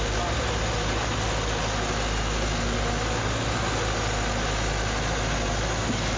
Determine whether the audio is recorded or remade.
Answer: recorded